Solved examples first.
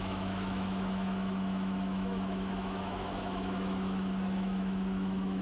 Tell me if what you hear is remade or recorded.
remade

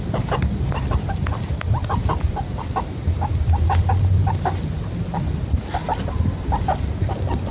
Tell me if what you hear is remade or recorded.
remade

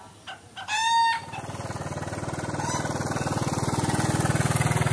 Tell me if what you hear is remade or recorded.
recorded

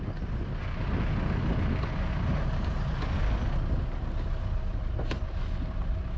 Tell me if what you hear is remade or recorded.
recorded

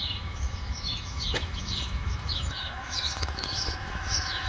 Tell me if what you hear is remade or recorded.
remade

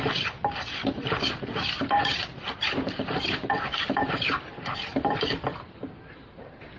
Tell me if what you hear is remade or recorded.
remade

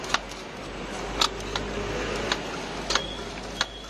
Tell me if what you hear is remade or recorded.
recorded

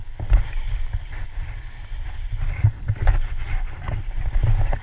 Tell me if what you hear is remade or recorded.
recorded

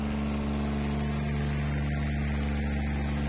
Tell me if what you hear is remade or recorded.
recorded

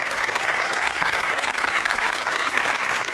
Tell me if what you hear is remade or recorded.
remade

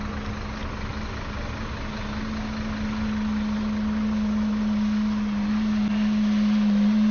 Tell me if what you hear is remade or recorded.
recorded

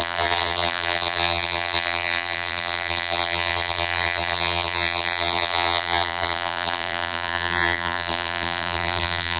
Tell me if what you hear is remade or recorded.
remade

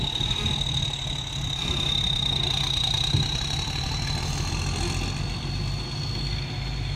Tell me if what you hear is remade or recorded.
recorded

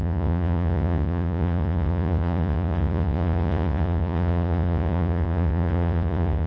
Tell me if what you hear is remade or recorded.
remade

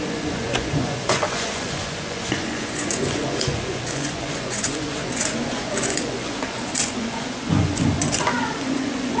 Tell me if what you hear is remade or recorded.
remade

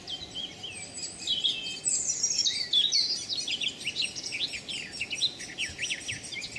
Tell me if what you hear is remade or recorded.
recorded